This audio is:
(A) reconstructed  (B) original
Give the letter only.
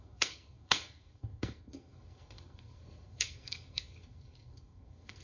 A